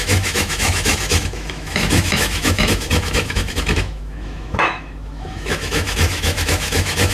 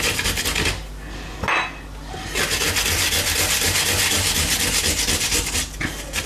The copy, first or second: first